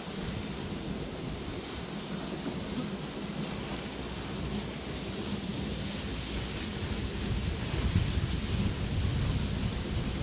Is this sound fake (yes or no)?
no